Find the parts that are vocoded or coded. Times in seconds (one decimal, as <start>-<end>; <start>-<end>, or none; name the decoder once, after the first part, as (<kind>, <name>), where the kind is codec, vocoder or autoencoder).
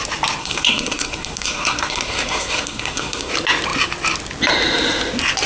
0.4-3.3 (codec, SNAC)